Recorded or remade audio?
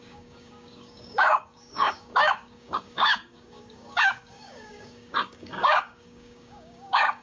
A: remade